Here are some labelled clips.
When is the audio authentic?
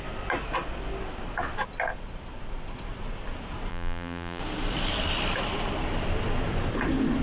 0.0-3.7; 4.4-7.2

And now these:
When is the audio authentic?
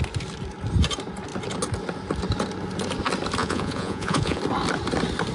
0.0-3.4; 4.4-5.3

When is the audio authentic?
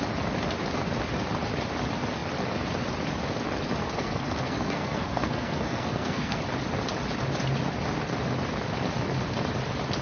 0.0-3.8; 6.4-10.0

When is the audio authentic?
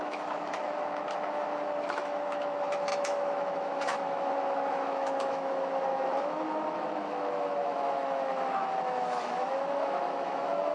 none